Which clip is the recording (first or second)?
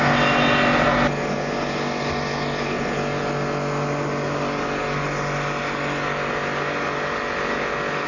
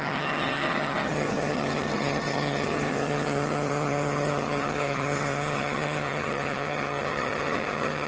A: first